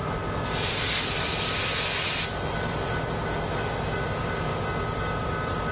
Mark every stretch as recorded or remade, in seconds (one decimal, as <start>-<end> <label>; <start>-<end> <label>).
0.0-5.7 recorded